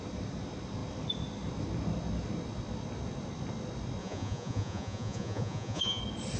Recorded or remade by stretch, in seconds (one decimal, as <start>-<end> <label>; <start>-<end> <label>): 0.0-4.0 recorded; 4.0-6.0 remade; 6.0-6.4 recorded